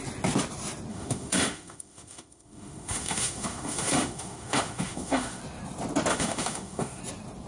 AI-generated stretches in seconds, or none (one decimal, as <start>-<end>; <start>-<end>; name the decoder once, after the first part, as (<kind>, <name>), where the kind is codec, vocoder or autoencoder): 0.9-5.4 (autoencoder, DAC-VAE); 6.1-7.0